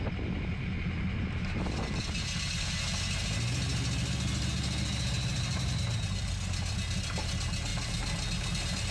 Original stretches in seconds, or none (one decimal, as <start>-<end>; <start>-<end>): 0.0-5.3; 7.3-7.7